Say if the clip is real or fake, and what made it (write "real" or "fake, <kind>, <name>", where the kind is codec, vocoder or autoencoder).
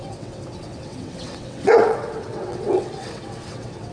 fake, vocoder, WaveNeXt